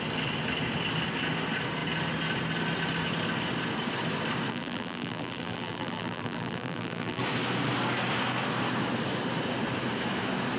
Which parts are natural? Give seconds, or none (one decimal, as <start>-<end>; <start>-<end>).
0.0-4.5; 7.2-10.6